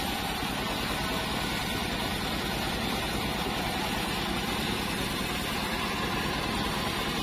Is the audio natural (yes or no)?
yes